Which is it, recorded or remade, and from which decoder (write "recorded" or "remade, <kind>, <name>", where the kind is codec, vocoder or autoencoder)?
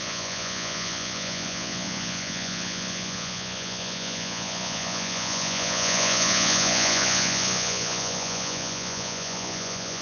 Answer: remade, vocoder, Vocos